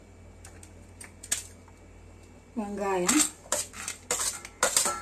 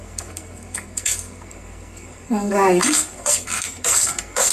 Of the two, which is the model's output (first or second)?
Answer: second